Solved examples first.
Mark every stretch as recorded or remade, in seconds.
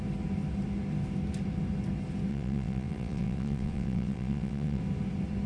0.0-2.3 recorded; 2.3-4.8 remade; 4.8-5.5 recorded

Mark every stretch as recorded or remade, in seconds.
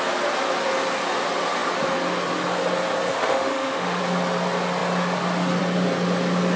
0.0-3.1 recorded; 3.1-4.0 remade; 4.0-6.6 recorded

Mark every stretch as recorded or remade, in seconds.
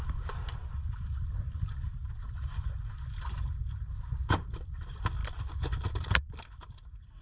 0.0-7.2 recorded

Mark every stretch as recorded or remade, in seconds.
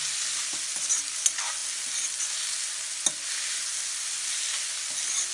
0.0-5.3 recorded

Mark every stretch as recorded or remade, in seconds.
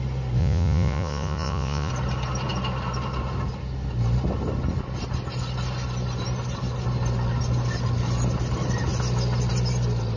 0.0-0.4 recorded; 0.4-1.9 remade; 1.9-10.2 recorded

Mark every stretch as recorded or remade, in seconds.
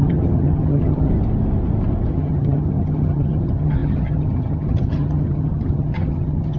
0.0-1.1 remade; 1.1-2.1 recorded; 2.1-6.6 remade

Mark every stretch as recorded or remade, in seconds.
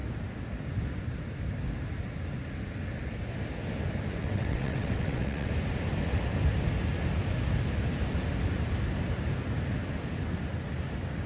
0.0-4.2 recorded; 4.2-5.5 remade; 5.5-11.3 recorded